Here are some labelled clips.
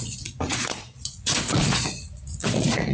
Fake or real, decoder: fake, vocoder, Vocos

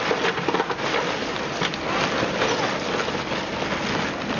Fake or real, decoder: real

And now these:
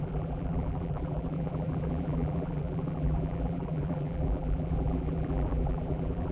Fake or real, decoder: fake, vocoder, BigVGAN v2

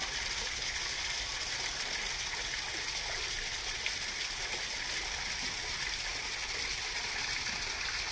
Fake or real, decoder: real